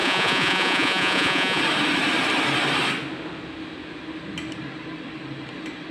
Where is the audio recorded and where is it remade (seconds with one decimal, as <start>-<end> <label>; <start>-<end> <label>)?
0.0-1.6 remade; 1.6-5.9 recorded